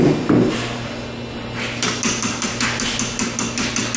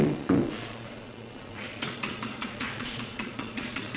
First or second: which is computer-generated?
second